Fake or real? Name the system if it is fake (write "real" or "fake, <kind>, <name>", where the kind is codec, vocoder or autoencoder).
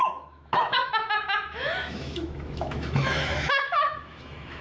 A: fake, autoencoder, DAC-VAE